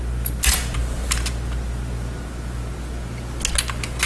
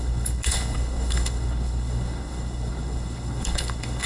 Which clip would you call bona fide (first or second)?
first